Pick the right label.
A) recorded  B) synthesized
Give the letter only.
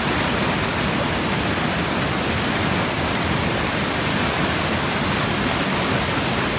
A